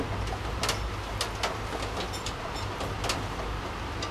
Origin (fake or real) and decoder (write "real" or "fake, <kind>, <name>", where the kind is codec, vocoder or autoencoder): real